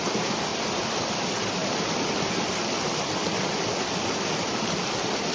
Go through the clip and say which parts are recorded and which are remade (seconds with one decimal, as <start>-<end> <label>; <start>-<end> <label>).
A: 0.0-0.5 recorded; 0.5-1.1 remade; 1.1-1.6 recorded; 1.6-2.7 remade; 2.7-5.3 recorded